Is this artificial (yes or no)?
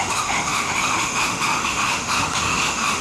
yes